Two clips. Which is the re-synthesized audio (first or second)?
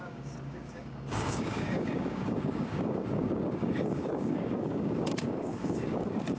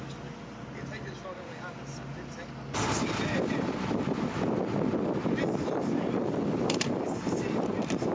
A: first